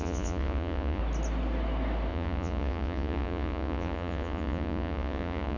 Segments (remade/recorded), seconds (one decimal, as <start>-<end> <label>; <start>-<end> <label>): 0.0-1.0 remade; 1.0-2.1 recorded; 2.1-5.6 remade